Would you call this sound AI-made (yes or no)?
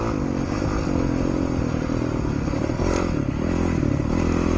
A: no